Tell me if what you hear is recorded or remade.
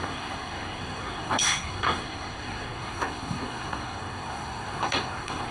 remade